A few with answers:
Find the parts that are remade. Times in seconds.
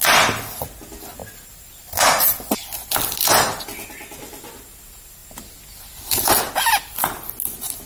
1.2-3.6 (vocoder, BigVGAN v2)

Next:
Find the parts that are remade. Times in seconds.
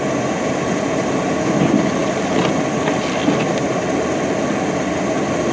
none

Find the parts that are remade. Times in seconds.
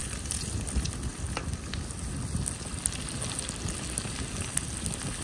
0.0-0.7 (vocoder, BigVGAN v2)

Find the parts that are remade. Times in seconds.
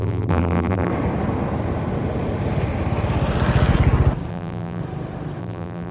0.0-0.9 (vocoder, BigVGAN v2); 4.3-4.8; 5.4-5.9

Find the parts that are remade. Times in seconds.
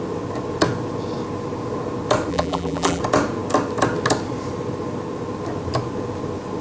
2.3-3.0 (vocoder, BigVGAN v2)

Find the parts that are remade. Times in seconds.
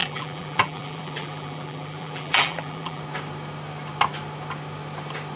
0.0-3.0 (vocoder, BigVGAN v2)